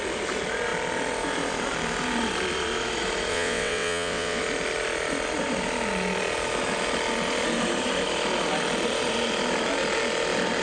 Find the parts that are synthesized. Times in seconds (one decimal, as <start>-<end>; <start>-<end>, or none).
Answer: 3.3-4.4